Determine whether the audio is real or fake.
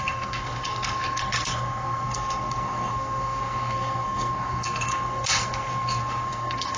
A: fake